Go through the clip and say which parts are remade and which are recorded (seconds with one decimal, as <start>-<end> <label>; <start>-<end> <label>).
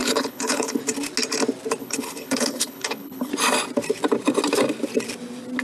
0.0-0.8 remade; 0.8-1.8 recorded; 1.8-3.3 remade; 3.3-5.6 recorded